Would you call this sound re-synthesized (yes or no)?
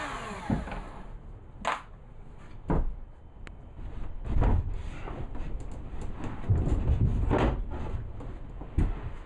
no